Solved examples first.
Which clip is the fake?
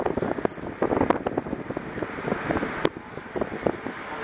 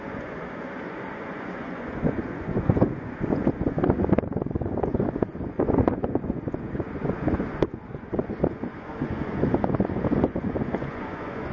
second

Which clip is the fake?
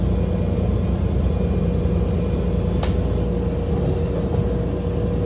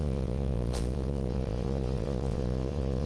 second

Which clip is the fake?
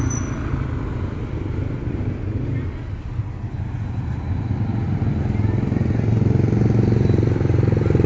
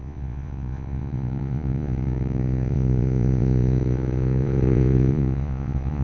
second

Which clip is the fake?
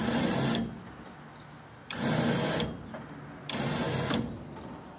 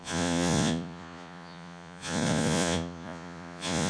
second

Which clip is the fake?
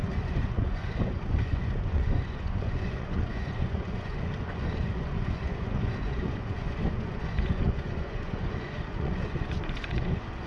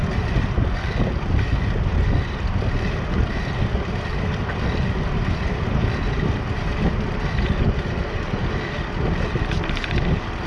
first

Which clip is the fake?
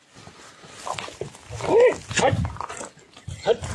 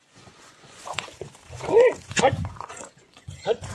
second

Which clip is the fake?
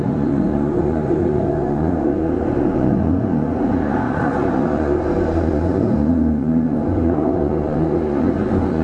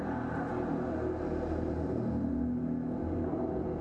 first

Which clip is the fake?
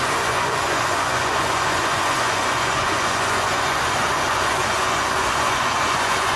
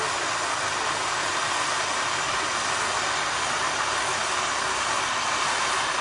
first